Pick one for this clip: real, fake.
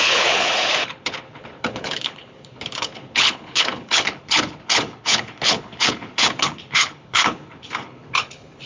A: fake